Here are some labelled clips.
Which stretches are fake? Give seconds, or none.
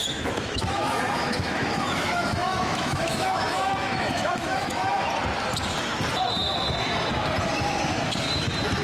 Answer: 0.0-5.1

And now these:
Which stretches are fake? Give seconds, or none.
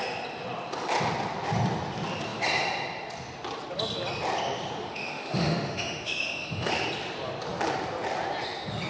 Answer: 4.8-6.7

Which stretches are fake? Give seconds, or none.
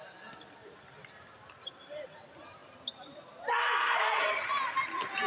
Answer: none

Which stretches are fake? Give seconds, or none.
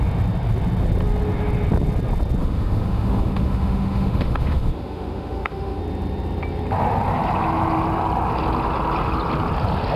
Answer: 2.4-5.8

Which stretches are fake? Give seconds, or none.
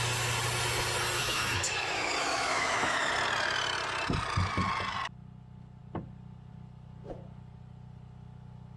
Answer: 1.2-3.1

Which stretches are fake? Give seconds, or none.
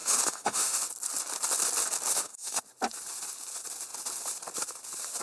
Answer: 0.0-0.8; 2.1-2.6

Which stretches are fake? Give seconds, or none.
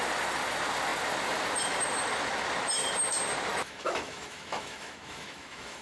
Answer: 3.5-5.8